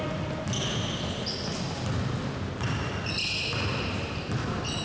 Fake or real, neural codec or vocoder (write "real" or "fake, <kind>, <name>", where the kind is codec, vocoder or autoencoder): real